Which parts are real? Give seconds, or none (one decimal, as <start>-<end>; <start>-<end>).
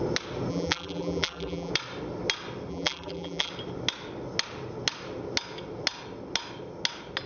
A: 0.0-0.5; 1.7-2.7; 3.5-7.3